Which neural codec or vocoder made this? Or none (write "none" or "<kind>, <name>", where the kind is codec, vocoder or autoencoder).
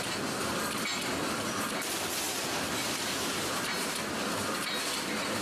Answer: none